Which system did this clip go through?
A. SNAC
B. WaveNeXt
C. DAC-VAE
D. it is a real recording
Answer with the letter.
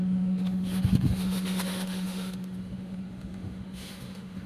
C